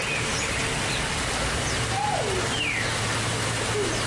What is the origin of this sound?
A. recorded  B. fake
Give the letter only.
A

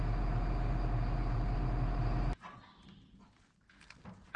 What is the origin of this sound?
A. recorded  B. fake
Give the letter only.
A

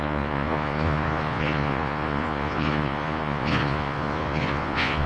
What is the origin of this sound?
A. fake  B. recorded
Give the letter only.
A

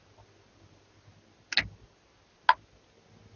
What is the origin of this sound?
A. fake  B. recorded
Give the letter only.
B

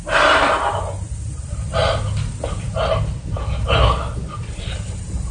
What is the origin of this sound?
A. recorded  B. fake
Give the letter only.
A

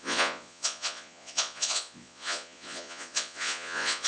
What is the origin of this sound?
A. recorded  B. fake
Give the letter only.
B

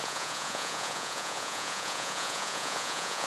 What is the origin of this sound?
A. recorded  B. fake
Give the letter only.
B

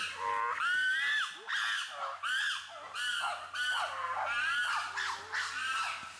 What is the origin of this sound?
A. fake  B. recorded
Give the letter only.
B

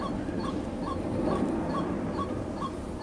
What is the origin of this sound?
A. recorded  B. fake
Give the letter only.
A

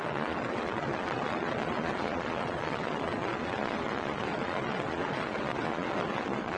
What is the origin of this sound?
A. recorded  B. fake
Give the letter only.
B